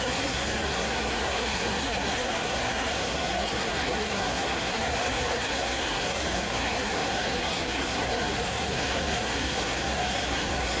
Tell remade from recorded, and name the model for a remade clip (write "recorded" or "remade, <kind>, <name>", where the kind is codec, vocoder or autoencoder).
remade, codec, SNAC